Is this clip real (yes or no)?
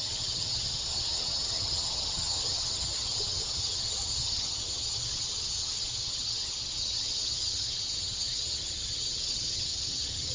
no